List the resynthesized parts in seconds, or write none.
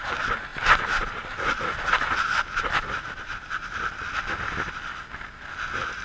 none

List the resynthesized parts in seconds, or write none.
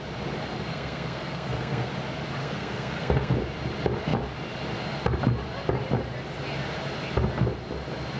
0.7-1.9 (codec, SNAC); 2.4-3.3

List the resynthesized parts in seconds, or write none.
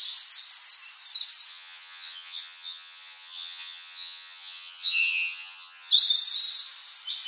1.5-5.9 (vocoder, HiFi-GAN)